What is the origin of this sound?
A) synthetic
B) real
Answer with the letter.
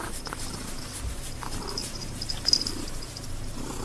B